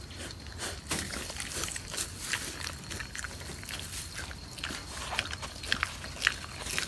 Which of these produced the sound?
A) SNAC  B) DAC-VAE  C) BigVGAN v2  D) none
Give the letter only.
D